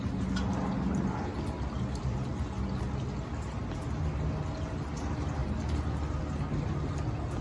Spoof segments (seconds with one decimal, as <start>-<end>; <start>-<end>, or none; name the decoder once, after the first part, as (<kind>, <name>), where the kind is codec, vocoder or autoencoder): none

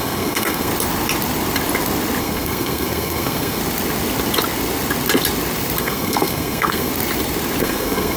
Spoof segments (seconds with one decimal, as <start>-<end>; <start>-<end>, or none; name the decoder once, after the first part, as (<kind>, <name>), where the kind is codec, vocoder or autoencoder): 0.0-0.7 (codec, SNAC); 2.2-3.6; 5.8-6.9; 7.6-8.2